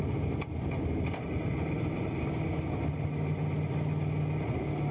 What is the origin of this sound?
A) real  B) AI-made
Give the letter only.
A